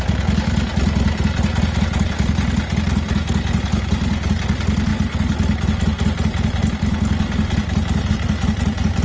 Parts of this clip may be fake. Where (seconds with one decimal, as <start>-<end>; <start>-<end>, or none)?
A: none